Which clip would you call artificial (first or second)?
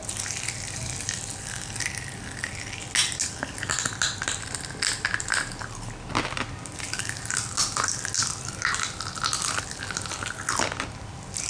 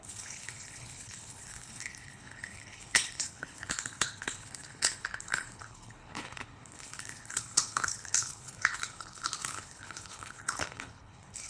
second